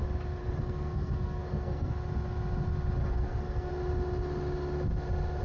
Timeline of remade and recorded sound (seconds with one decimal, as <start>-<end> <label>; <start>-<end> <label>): 0.0-0.4 recorded; 0.4-1.9 remade; 1.9-3.0 recorded; 3.0-3.7 remade; 3.7-5.4 recorded